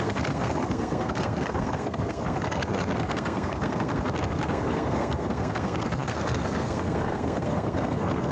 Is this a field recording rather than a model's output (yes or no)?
no